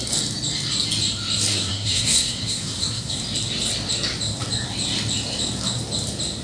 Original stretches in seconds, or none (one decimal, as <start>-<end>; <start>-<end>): 0.0-1.5; 3.2-6.4